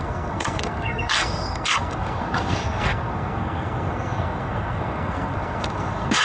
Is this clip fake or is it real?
fake